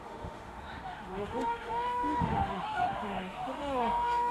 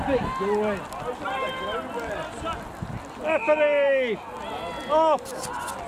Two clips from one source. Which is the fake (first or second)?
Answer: first